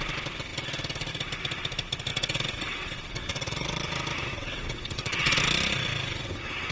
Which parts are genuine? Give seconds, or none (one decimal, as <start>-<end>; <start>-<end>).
0.0-2.1; 3.9-4.3; 5.4-6.7

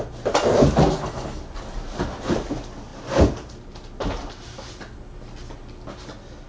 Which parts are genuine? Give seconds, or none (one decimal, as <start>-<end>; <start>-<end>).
0.0-0.9; 1.4-6.5

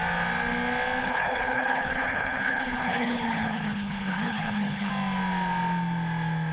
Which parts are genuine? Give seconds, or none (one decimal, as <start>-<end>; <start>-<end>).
0.0-1.0; 4.9-6.5

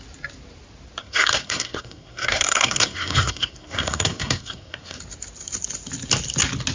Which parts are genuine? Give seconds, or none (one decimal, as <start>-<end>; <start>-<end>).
0.0-1.0; 5.0-6.7

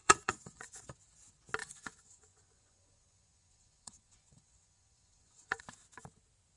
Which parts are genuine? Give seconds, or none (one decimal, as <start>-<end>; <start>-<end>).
0.8-1.6; 5.6-6.6

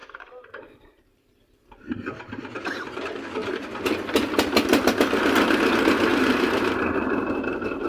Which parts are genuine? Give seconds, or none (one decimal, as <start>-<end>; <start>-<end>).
2.2-6.1